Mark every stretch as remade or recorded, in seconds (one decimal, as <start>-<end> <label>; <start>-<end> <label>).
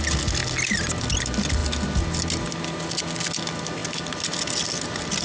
0.0-5.2 recorded